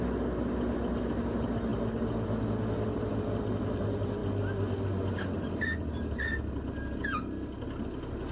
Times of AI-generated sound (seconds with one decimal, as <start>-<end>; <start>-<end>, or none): none